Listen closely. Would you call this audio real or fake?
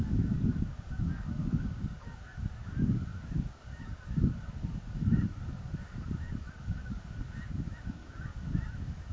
fake